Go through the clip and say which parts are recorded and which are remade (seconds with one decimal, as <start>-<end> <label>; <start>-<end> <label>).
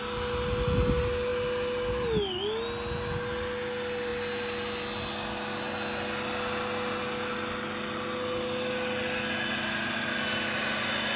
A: 0.0-11.2 recorded